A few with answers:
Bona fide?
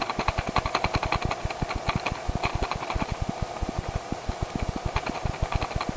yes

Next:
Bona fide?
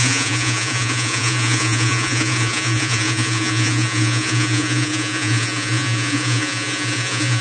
no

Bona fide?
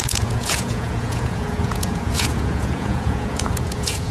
no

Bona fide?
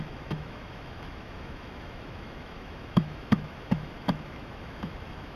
no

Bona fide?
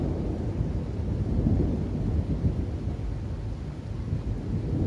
yes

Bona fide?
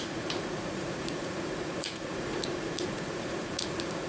no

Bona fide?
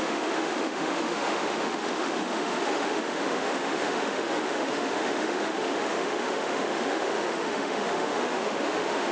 no